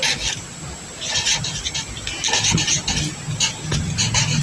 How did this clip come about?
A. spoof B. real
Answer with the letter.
B